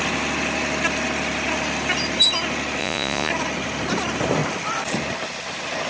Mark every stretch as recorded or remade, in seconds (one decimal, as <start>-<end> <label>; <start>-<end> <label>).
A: 0.0-2.8 recorded; 2.8-3.3 remade; 3.3-5.9 recorded